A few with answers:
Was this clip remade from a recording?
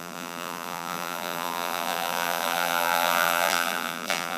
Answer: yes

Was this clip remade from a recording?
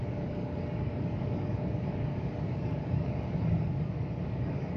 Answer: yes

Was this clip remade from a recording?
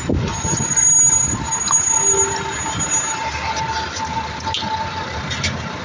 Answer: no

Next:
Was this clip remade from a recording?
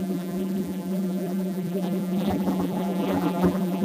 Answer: yes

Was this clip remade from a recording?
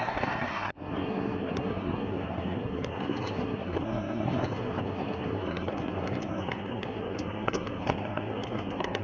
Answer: yes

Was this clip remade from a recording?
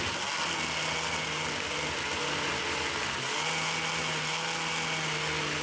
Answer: no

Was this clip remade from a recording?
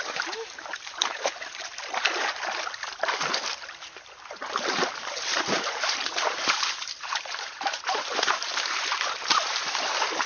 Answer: yes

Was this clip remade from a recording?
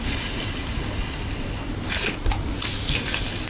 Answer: no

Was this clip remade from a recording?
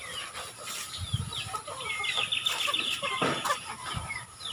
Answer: no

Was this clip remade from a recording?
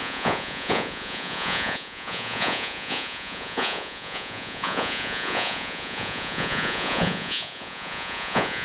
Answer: yes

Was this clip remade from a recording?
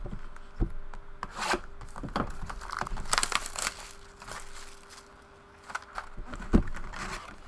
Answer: no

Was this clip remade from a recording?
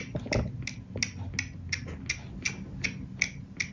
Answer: no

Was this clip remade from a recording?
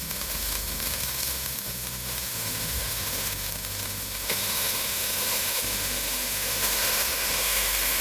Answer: yes